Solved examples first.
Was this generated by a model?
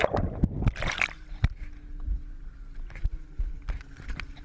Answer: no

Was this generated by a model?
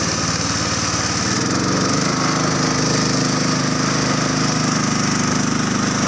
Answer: no